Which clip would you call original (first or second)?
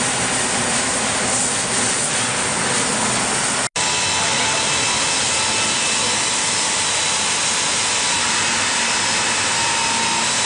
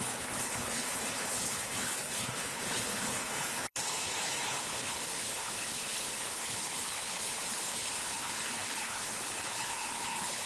first